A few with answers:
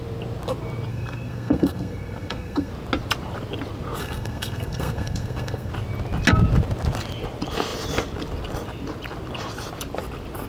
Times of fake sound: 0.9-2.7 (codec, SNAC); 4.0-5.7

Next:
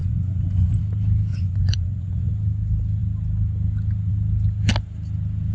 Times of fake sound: 0.0-0.8 (vocoder, Vocos); 1.3-2.3

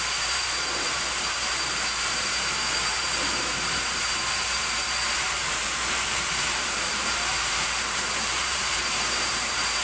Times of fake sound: 0.0-9.8 (vocoder, BigVGAN v2)

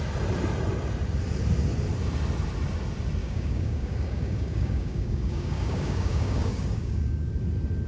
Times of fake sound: 3.2-7.3 (codec, DAC)

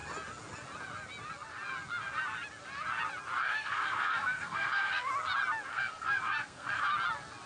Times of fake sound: 3.4-5.1 (codec, SNAC); 5.7-6.8